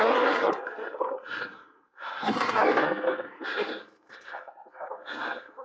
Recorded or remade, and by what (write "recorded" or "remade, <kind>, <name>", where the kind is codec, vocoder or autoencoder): remade, codec, SNAC